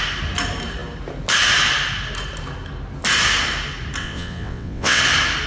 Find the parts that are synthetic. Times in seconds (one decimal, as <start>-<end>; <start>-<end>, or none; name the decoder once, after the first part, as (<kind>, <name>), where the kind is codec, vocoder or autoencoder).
4.0-5.0 (vocoder, WaveNeXt)